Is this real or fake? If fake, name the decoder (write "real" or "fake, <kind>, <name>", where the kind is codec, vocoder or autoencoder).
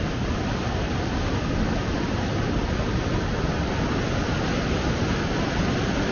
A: real